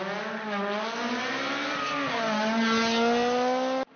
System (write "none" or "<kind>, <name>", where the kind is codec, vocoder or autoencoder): none